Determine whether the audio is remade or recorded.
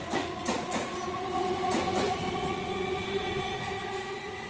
remade